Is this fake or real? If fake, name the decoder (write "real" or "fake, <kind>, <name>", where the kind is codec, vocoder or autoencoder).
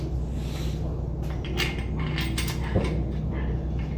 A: real